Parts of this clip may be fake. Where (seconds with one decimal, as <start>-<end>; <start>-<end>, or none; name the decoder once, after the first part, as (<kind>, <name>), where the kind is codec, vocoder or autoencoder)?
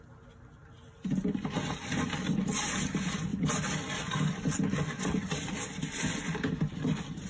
none